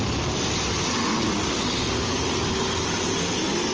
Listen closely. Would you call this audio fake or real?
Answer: real